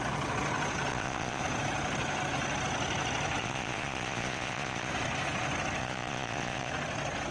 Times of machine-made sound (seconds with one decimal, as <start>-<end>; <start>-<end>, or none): 0.9-1.4; 3.4-4.9; 5.8-6.7